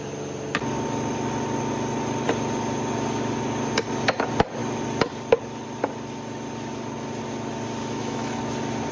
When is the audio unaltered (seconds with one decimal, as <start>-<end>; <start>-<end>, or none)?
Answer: 0.0-7.8; 8.4-8.9